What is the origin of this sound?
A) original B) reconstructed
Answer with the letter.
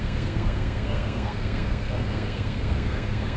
B